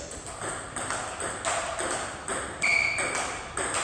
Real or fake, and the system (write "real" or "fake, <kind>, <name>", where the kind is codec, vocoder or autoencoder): real